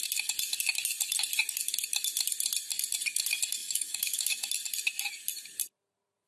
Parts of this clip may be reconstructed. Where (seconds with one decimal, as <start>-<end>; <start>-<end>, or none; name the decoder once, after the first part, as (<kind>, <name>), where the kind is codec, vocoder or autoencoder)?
3.6-4.5 (autoencoder, DAC-VAE)